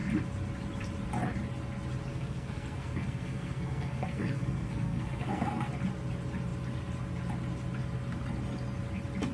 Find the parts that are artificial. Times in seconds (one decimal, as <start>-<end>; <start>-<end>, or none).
2.1-5.7